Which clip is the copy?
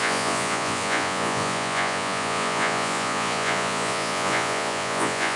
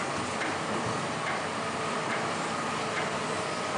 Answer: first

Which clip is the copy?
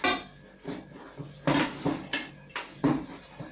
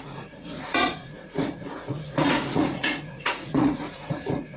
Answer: second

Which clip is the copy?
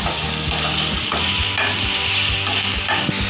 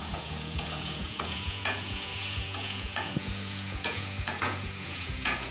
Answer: second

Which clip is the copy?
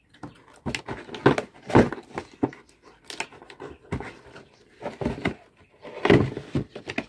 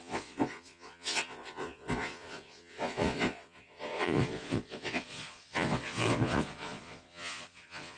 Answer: second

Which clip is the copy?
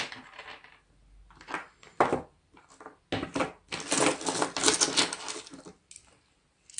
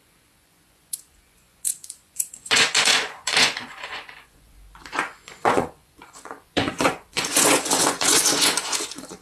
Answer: second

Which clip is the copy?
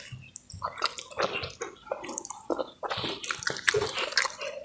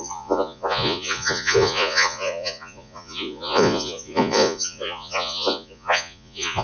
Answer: second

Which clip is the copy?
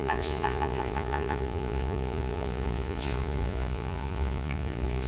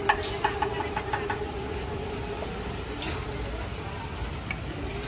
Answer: first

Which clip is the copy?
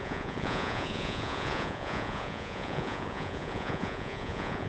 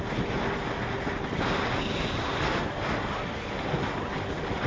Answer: first